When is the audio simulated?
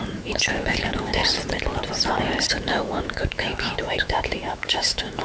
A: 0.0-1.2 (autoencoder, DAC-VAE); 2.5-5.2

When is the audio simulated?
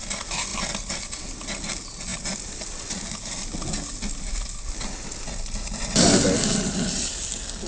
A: none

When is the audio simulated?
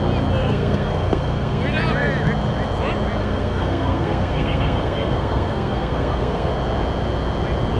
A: 0.4-1.6 (codec, SNAC); 3.2-6.5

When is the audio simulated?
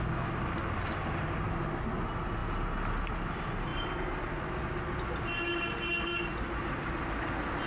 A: none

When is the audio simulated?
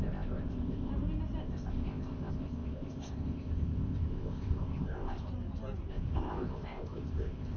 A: 0.0-0.9 (codec, ZipCodec); 1.4-5.3; 5.9-7.6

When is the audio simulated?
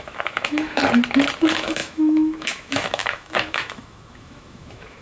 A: 0.0-0.8 (autoencoder, DAC-VAE); 1.4-5.0